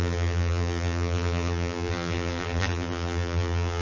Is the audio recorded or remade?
remade